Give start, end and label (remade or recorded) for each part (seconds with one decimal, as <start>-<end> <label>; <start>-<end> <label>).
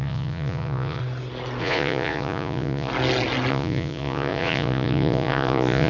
0.0-1.0 remade; 1.0-1.6 recorded; 1.6-2.9 remade; 2.9-3.5 recorded; 3.5-5.9 remade